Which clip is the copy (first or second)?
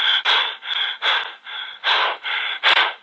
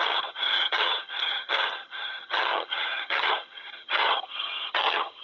second